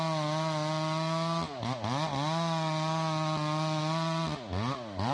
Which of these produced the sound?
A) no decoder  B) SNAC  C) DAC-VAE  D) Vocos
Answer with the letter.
A